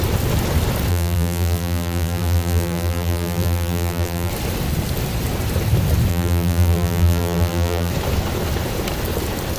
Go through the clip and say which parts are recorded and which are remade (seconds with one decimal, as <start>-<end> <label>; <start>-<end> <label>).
0.0-0.9 recorded; 0.9-4.3 remade; 4.3-6.1 recorded; 6.1-7.9 remade; 7.9-9.6 recorded